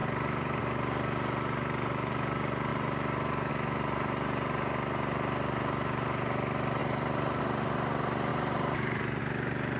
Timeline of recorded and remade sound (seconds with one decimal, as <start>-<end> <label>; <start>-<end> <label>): 0.0-0.6 remade; 0.6-6.8 recorded; 6.8-7.4 remade; 7.4-8.3 recorded; 8.3-9.2 remade; 9.2-9.8 recorded